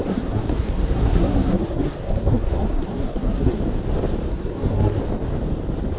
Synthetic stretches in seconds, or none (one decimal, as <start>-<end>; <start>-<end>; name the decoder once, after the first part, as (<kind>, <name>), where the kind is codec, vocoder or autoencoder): 0.0-3.6 (codec, SNAC); 4.3-5.0